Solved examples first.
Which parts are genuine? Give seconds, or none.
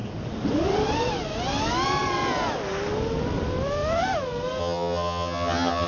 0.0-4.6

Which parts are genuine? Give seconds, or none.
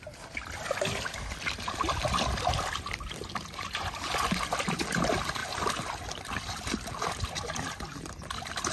0.0-8.7